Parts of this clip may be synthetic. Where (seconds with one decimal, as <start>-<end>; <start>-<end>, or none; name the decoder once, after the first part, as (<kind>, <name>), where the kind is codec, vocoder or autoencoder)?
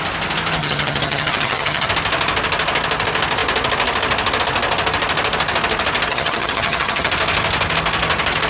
0.6-1.9 (vocoder, HiFi-GAN); 6.1-7.1